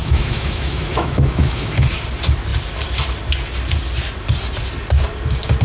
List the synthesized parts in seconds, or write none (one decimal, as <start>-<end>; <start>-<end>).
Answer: 0.0-1.7